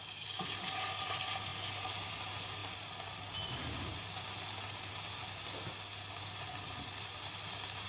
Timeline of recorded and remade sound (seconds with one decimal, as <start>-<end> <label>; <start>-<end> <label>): 0.0-7.9 recorded

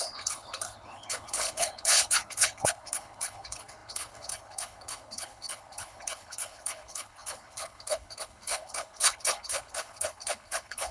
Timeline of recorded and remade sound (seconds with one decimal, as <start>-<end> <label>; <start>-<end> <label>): 0.0-10.9 remade

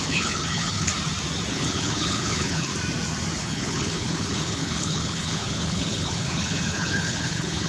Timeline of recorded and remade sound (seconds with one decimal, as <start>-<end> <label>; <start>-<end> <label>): 0.0-0.9 remade; 0.9-1.5 recorded; 1.5-2.7 remade; 2.7-3.4 recorded; 3.4-7.7 remade

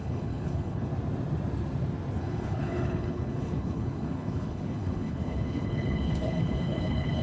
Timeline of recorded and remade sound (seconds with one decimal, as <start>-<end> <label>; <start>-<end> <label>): 0.0-0.9 remade; 0.9-2.2 recorded; 2.2-7.2 remade

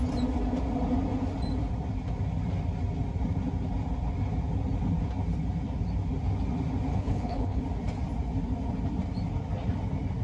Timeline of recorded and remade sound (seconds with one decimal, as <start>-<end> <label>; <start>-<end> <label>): 0.0-6.9 recorded; 6.9-7.6 remade; 7.6-10.2 recorded

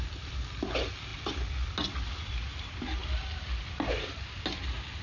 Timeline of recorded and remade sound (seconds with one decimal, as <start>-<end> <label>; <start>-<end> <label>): 0.0-5.0 recorded

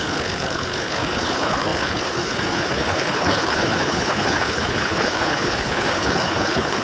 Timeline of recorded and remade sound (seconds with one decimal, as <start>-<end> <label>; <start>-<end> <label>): 0.0-6.8 remade

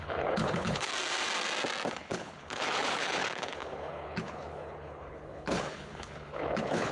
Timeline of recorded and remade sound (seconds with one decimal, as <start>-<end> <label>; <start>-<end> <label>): 0.0-0.9 remade; 0.9-1.9 recorded; 1.9-6.9 remade